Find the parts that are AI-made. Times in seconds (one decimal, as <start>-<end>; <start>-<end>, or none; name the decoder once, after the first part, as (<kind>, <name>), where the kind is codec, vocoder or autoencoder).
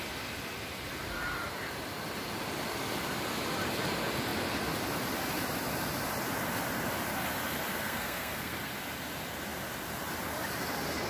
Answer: 7.7-8.6 (codec, SNAC)